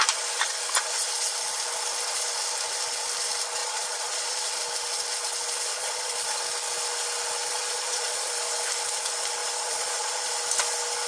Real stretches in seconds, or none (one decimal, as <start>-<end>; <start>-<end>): 0.0-3.6; 4.6-5.7; 6.4-7.4; 8.3-9.4; 10.3-11.1